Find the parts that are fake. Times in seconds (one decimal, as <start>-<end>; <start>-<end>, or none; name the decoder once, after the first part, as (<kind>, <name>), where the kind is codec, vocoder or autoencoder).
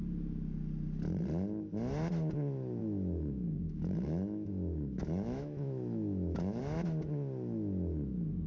2.8-6.6 (autoencoder, DAC-VAE)